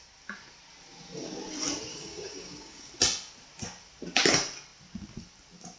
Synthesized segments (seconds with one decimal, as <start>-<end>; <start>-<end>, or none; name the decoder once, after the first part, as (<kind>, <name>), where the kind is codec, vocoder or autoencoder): 1.9-2.9 (codec, DAC)